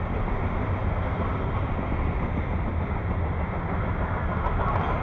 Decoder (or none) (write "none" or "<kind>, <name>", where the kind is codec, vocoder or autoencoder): none